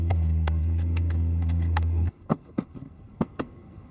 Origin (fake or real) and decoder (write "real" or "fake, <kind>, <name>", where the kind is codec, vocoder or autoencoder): fake, codec, SNAC